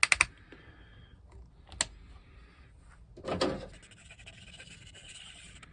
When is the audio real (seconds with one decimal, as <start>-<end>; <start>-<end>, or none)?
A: 0.0-5.0